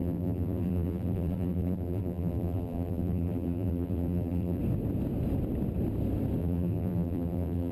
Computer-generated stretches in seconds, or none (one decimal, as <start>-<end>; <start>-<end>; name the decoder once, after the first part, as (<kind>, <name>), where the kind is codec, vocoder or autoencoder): 0.0-4.6 (vocoder, BigVGAN v2); 6.4-7.7